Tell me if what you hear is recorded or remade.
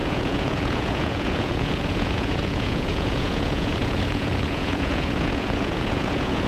remade